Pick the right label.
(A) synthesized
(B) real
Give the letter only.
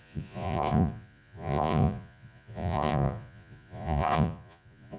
A